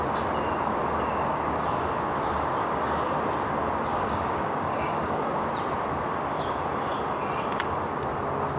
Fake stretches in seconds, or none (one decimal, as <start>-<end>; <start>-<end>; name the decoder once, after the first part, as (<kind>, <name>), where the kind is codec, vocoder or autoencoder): 2.6-3.1 (codec, DAC); 3.9-5.4